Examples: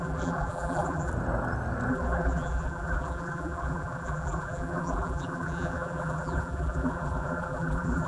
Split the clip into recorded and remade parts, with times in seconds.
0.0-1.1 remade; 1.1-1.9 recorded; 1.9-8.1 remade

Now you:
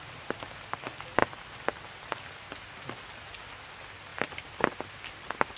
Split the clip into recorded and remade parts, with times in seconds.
0.0-1.2 recorded; 1.2-2.3 remade; 2.3-4.1 recorded; 4.1-4.9 remade; 4.9-5.6 recorded

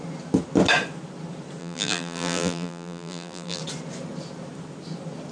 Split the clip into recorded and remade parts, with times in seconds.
0.0-1.6 recorded; 1.6-3.6 remade; 3.6-5.3 recorded

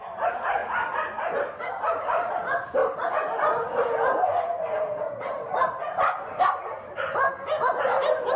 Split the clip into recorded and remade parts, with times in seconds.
0.0-2.8 remade; 2.8-5.1 recorded; 5.1-8.4 remade